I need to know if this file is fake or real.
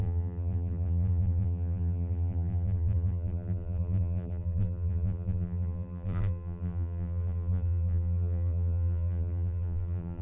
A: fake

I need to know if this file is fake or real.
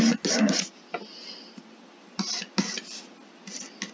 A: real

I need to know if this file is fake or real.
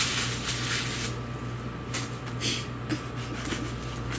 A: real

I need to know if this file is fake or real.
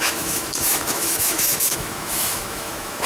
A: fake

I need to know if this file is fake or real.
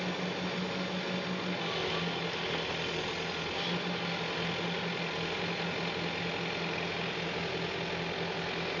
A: real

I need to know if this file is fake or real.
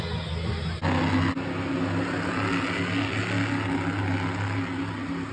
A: real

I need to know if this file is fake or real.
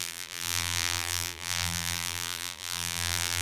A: fake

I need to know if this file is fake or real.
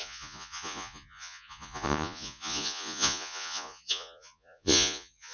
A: fake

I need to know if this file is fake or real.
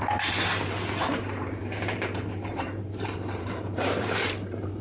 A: fake